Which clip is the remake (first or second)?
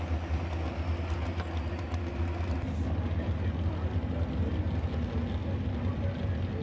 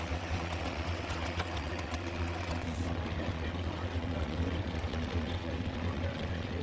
second